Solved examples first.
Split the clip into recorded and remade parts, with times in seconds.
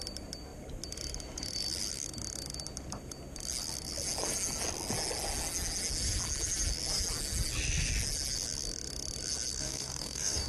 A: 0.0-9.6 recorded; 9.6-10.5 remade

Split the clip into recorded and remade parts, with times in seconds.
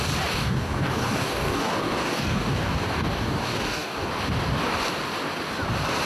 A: 0.0-0.4 recorded; 0.4-4.1 remade; 4.1-6.1 recorded